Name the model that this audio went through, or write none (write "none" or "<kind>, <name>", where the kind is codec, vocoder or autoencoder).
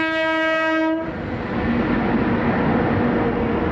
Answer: none